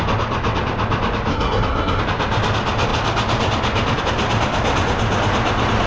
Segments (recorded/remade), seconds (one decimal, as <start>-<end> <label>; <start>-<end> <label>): 0.0-1.3 recorded; 1.3-2.0 remade; 2.0-5.9 recorded